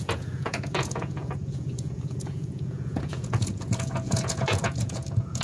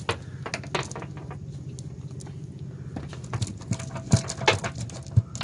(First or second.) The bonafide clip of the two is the second